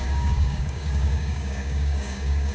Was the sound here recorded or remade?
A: remade